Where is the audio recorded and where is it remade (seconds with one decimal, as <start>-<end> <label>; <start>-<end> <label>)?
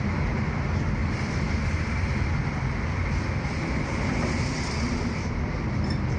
0.0-6.2 recorded